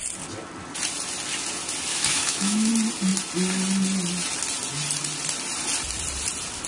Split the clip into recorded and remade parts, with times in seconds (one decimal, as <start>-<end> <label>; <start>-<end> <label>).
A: 0.0-1.9 recorded; 1.9-2.7 remade; 2.7-6.7 recorded